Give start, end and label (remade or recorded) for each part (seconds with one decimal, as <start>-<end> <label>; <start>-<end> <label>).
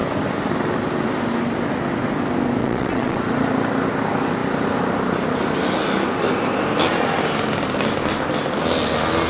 0.0-2.6 recorded; 2.6-3.2 remade; 3.2-9.3 recorded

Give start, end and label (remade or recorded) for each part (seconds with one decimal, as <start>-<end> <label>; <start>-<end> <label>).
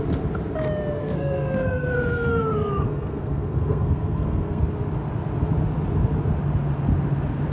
0.0-1.0 recorded; 1.0-4.6 remade; 4.6-7.5 recorded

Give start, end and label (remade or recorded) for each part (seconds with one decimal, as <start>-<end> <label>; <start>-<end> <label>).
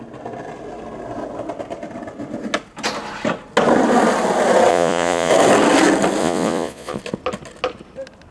0.0-4.7 recorded; 4.7-5.3 remade; 5.3-6.2 recorded; 6.2-7.0 remade; 7.0-8.3 recorded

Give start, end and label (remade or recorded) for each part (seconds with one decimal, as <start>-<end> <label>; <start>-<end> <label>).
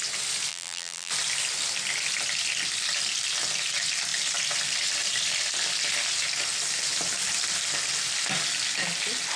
0.0-0.5 recorded; 0.5-1.1 remade; 1.1-9.4 recorded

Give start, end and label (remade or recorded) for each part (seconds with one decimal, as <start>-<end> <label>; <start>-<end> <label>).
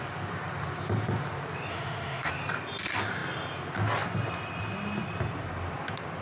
0.0-1.7 recorded; 1.7-2.3 remade; 2.3-6.2 recorded